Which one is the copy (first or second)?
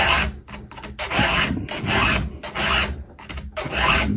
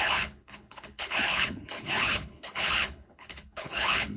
second